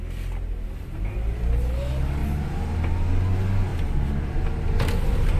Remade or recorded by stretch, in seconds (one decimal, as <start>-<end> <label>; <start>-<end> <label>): 0.0-5.4 recorded